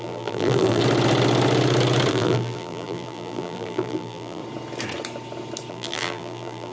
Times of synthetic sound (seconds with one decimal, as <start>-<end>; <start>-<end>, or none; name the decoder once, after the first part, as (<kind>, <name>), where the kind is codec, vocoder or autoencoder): 0.0-0.8 (vocoder, BigVGAN v2); 2.1-4.4; 5.7-6.7